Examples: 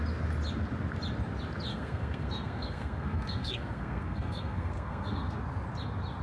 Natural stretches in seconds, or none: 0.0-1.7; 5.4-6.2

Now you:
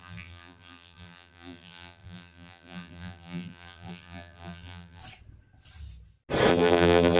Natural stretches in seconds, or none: 5.0-6.5

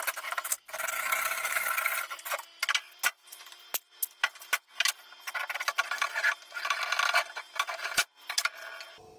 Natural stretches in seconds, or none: 0.0-0.5; 1.7-9.2

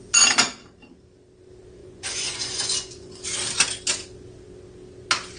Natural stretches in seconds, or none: 0.0-1.8; 3.2-5.4

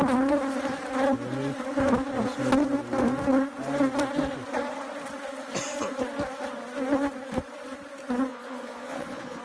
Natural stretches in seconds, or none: 0.0-8.3